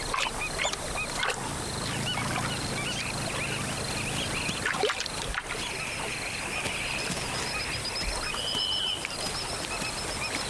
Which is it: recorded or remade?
recorded